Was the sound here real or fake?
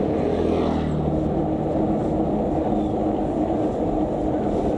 real